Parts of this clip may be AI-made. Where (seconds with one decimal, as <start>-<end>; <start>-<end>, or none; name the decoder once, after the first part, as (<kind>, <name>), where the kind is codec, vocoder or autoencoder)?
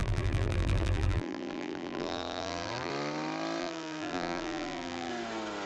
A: 0.0-2.9 (vocoder, BigVGAN v2); 3.6-5.1